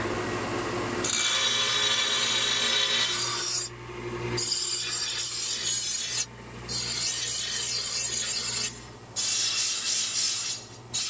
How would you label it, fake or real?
real